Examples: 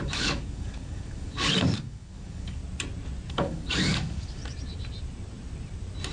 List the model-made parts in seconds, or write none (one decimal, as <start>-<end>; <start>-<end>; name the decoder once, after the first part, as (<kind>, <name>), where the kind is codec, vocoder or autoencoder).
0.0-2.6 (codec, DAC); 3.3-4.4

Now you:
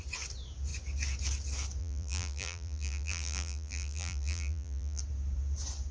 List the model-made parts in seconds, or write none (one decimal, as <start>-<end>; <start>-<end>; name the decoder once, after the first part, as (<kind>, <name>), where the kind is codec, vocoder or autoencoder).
1.8-5.0 (vocoder, BigVGAN v2)

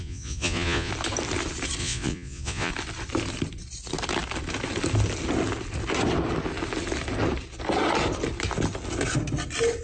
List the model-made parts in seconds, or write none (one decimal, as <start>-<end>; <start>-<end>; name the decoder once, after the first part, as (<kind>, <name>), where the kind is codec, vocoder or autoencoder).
0.0-0.9 (vocoder, Vocos); 1.8-2.7

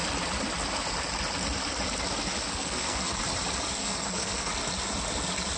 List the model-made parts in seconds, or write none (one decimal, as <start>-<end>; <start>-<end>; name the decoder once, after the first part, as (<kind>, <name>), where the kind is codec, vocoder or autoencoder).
2.5-3.2 (codec, SNAC); 3.8-4.5

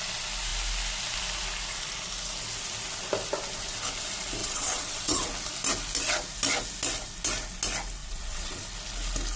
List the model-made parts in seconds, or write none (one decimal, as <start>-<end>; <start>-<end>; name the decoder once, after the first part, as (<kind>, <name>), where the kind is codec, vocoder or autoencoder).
4.4-5.3 (vocoder, WaveNeXt); 8.0-8.6

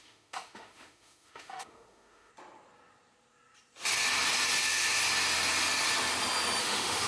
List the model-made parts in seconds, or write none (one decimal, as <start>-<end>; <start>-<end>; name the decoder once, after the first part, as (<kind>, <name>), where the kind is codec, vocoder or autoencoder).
0.0-2.3 (autoencoder, DAC-VAE); 6.6-7.1

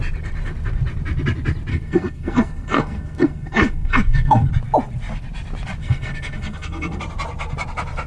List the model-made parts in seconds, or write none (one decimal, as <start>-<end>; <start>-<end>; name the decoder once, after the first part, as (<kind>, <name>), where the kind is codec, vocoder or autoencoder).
1.7-4.5 (codec, SNAC); 5.8-7.0